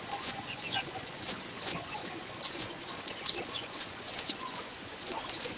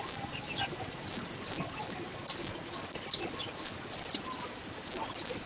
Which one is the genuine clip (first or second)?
second